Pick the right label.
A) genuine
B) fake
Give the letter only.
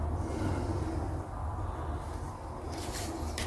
A